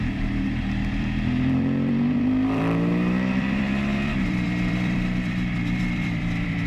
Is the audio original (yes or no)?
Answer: no